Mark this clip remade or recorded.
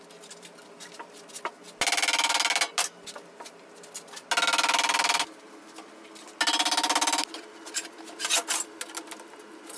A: recorded